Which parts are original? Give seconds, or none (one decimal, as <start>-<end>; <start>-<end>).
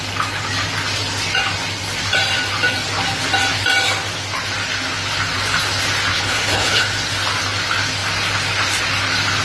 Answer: 0.0-6.1; 6.9-9.4